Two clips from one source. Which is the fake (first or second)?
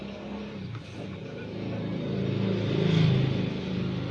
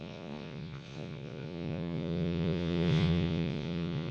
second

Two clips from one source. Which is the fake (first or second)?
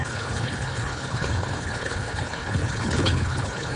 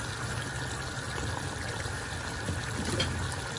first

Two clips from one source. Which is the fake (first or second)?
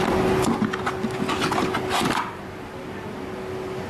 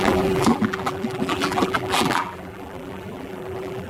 second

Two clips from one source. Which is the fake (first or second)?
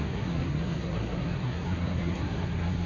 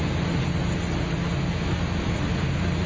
first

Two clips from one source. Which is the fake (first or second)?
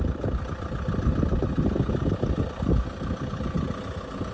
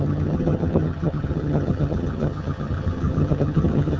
second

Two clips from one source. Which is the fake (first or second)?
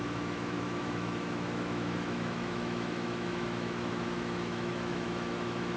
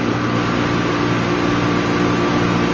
first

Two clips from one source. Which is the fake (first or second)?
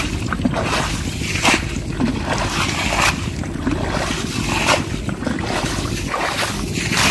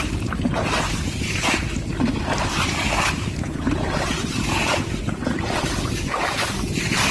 second